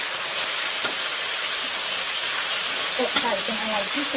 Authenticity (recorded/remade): remade